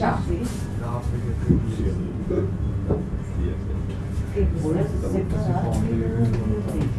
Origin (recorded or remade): recorded